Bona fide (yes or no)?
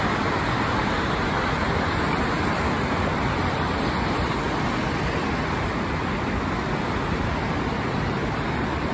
yes